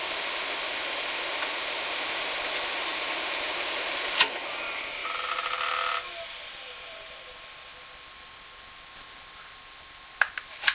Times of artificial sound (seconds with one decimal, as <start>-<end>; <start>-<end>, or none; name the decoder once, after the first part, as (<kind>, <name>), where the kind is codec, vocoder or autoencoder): 5.0-5.8 (vocoder, BigVGAN v2)